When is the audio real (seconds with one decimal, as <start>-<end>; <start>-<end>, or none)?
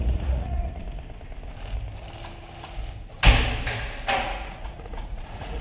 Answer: 0.8-4.2